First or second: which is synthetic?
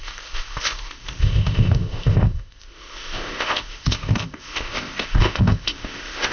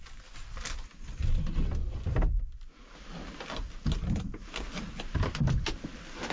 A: first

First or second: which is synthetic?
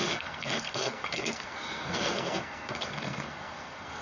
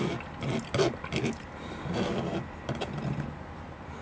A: first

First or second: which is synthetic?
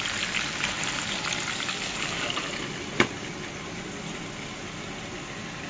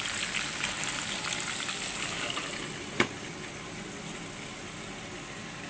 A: first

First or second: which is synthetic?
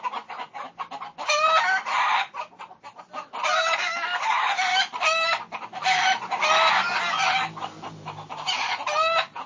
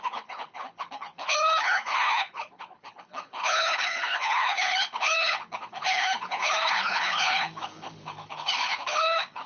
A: second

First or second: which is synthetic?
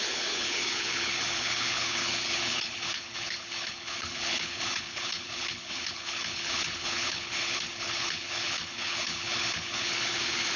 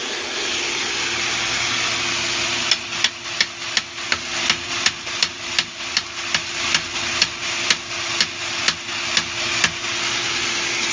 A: first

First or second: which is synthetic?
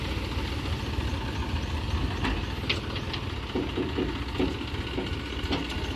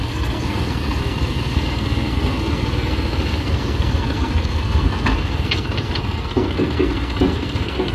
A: second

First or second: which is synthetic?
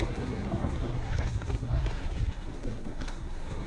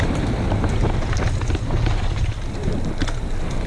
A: first